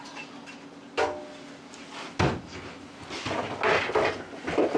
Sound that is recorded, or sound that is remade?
recorded